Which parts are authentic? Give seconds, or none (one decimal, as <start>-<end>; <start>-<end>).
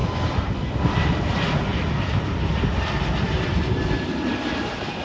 0.0-5.0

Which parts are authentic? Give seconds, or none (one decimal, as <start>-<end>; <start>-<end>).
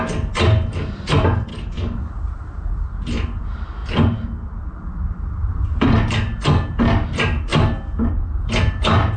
0.0-1.5; 2.1-9.2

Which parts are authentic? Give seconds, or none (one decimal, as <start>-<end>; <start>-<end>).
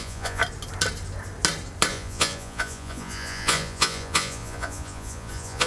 0.4-1.9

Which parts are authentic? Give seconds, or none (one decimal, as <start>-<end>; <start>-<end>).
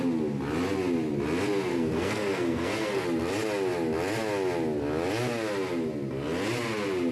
0.0-1.7; 3.0-7.1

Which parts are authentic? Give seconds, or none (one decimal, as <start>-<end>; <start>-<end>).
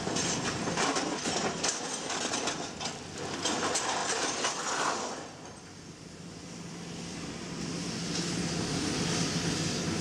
0.0-4.0; 7.7-10.0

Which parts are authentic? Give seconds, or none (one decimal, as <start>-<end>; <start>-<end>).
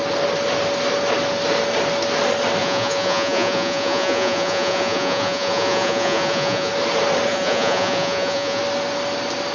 0.0-2.6; 6.7-7.3; 8.6-9.5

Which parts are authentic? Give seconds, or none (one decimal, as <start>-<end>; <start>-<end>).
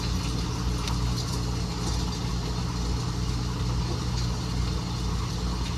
0.0-5.8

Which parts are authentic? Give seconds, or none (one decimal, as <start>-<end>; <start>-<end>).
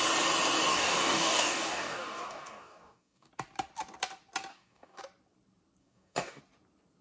0.0-0.7; 3.3-4.5; 5.0-5.8; 6.4-7.0